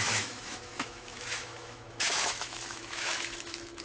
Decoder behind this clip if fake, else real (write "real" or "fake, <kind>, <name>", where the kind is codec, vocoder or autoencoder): fake, autoencoder, DAC-VAE